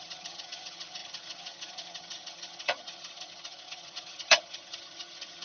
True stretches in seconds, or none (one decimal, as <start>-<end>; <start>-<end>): none